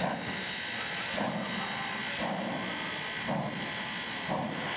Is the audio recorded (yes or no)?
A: yes